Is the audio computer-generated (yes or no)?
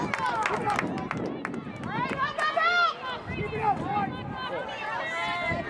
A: no